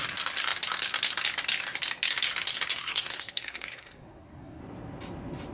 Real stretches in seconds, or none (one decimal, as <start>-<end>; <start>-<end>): 0.0-2.8; 4.6-5.5